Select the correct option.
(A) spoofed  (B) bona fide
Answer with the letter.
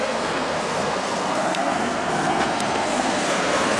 A